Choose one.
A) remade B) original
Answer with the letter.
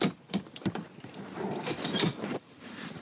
A